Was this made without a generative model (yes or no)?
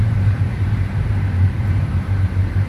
no